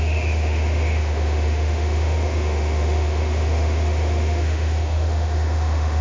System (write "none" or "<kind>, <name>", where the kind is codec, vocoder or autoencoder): autoencoder, DAC-VAE